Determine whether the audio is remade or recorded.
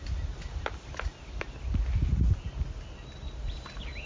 recorded